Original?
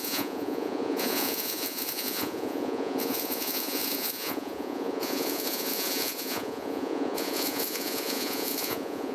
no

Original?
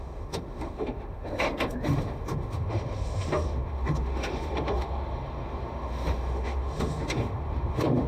no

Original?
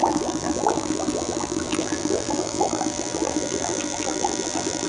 no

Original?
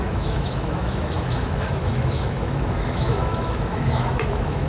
no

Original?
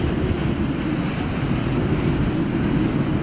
yes